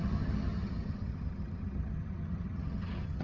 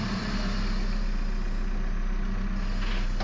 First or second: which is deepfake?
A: first